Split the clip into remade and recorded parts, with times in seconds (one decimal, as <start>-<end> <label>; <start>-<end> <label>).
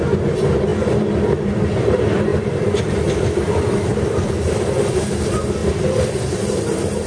0.0-5.6 recorded; 5.6-6.6 remade; 6.6-7.1 recorded